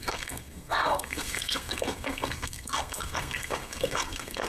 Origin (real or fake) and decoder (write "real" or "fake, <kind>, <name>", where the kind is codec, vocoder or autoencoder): fake, codec, SNAC